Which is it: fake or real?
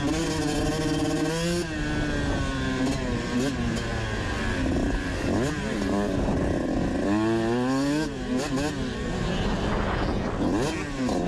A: real